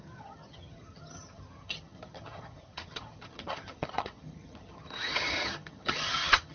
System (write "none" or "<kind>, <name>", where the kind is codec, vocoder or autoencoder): vocoder, HiFi-GAN